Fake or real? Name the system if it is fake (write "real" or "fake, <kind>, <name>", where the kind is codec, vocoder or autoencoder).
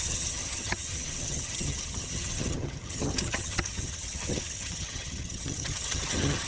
fake, vocoder, HiFi-GAN